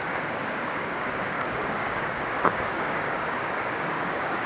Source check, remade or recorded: remade